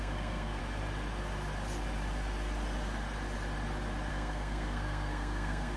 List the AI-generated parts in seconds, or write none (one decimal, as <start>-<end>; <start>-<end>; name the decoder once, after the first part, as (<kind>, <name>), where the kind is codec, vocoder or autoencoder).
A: 0.0-0.6 (codec, SNAC); 4.1-5.8